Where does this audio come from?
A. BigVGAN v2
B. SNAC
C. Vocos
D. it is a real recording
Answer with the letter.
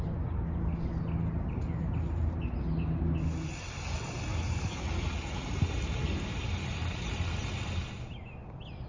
D